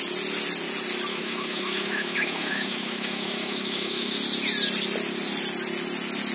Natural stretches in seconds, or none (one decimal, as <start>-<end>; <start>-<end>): 0.0-1.1; 4.1-6.3